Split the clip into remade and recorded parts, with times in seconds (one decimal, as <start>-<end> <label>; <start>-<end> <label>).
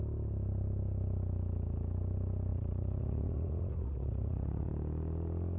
0.0-2.5 recorded; 2.5-4.7 remade; 4.7-5.6 recorded